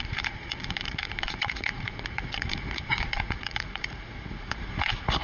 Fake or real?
fake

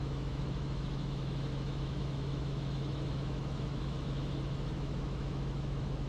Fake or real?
fake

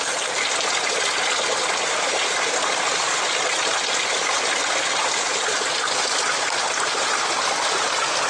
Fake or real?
real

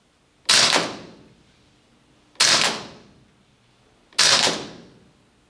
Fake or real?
real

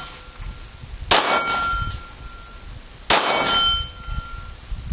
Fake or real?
real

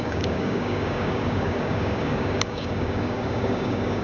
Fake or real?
fake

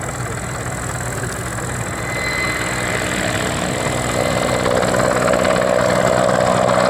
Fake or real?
real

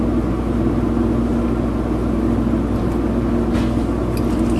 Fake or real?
real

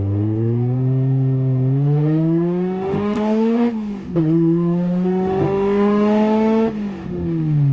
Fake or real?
fake